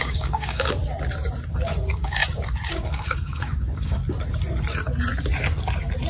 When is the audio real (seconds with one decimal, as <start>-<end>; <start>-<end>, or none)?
0.8-1.5; 2.2-2.7; 4.0-6.1

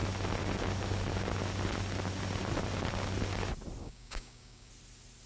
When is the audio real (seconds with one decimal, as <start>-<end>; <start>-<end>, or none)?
0.0-3.8; 4.7-5.3

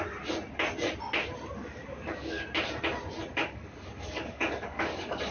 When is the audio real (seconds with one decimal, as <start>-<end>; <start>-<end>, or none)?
0.0-1.6; 2.4-3.4

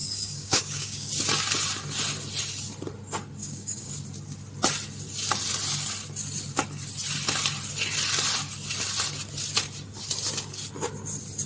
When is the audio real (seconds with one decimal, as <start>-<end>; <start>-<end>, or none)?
1.1-3.4; 3.9-11.5

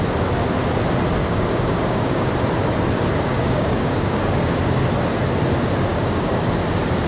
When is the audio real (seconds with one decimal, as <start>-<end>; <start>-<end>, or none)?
0.0-1.2; 2.3-3.3; 4.6-5.9; 6.4-7.1

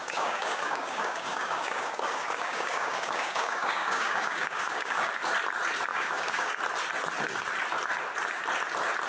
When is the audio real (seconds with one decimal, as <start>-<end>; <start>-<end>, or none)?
5.1-5.9; 6.5-9.1